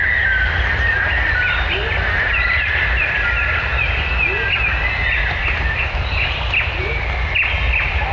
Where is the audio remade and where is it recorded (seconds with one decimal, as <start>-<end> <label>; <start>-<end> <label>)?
0.0-3.7 remade; 3.7-5.4 recorded; 5.4-8.1 remade